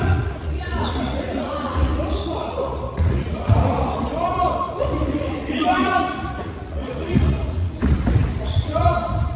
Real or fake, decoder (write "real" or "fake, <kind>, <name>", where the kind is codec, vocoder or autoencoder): fake, vocoder, Vocos